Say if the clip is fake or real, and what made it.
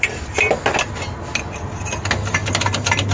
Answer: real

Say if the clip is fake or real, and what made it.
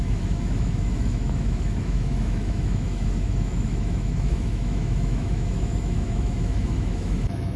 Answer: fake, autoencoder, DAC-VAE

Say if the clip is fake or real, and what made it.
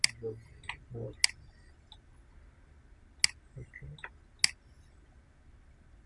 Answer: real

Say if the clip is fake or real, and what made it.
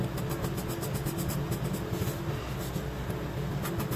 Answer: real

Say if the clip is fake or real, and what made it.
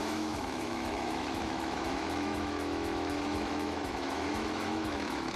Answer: fake, autoencoder, DAC-VAE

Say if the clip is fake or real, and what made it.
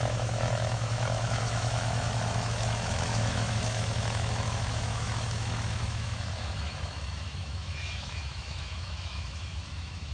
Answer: fake, autoencoder, DAC-VAE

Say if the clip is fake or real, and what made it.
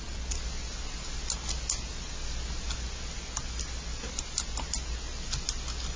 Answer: real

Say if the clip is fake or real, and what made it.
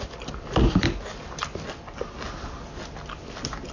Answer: real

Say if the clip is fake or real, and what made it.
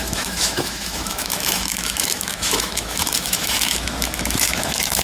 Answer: fake, autoencoder, DAC-VAE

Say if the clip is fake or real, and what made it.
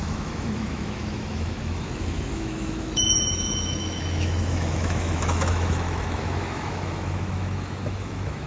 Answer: fake, autoencoder, DAC-VAE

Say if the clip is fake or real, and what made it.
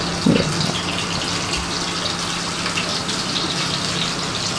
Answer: real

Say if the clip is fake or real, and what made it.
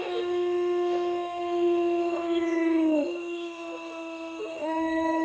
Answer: fake, autoencoder, DAC-VAE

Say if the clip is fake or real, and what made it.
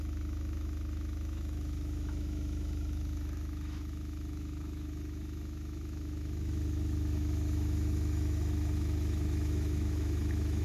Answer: fake, autoencoder, DAC-VAE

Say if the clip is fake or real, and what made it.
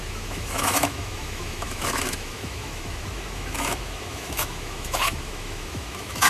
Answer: fake, autoencoder, DAC-VAE